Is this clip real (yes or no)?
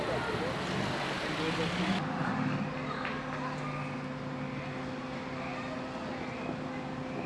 yes